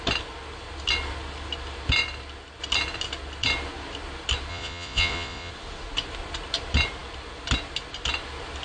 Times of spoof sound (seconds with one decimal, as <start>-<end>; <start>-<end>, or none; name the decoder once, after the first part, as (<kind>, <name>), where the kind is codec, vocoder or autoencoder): 4.5-5.5 (vocoder, Vocos)